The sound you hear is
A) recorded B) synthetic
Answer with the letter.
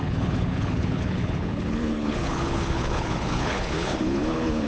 B